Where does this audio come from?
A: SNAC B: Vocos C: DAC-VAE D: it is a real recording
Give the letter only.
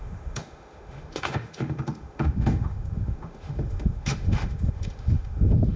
C